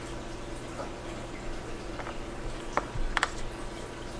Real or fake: real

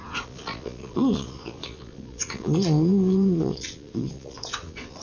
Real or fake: fake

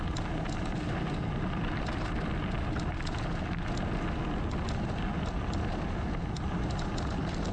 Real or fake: real